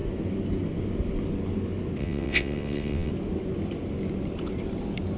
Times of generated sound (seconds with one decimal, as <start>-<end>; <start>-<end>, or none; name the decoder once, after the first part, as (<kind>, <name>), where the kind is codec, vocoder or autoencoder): 2.0-3.1 (vocoder, WaveNeXt)

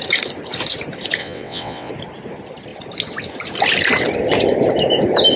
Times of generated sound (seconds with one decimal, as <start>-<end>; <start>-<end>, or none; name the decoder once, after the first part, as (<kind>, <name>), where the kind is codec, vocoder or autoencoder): 1.2-1.9 (vocoder, WaveNeXt)